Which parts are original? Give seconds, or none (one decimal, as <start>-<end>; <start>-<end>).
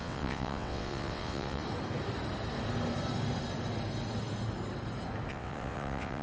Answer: 1.6-5.3